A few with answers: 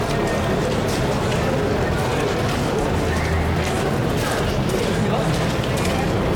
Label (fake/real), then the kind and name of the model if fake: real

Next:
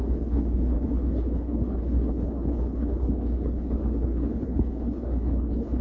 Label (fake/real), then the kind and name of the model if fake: fake, codec, HILCodec